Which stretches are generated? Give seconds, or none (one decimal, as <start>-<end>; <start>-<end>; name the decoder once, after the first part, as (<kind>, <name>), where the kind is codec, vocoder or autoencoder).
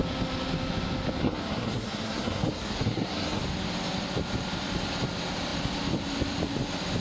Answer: 1.2-3.4 (codec, SNAC)